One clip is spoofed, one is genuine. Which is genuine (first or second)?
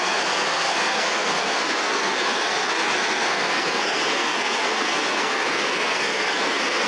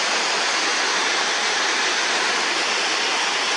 second